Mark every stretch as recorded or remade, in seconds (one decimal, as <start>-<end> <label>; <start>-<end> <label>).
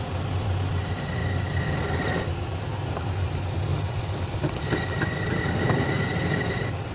0.0-3.7 recorded; 3.7-5.4 remade; 5.4-6.9 recorded